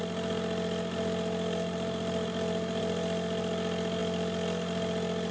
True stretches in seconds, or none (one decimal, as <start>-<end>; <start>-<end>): 0.0-5.3

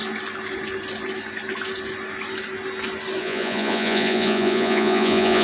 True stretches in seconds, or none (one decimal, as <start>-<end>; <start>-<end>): 0.0-3.2

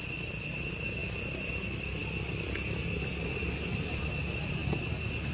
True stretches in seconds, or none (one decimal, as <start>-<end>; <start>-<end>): 0.0-5.3